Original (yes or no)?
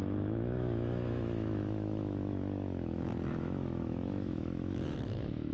no